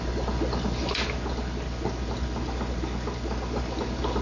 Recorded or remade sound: recorded